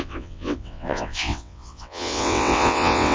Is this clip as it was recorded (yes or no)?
no